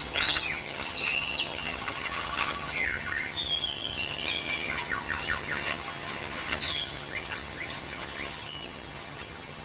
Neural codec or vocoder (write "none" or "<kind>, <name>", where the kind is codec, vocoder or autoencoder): vocoder, HiFi-GAN